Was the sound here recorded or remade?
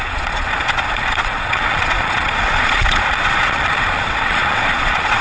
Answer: remade